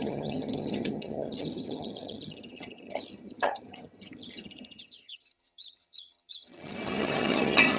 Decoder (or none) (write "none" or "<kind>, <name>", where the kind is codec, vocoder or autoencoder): vocoder, HiFi-GAN